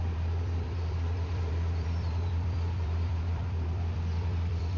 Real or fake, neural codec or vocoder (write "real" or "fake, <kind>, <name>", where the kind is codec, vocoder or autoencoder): fake, vocoder, BigVGAN v2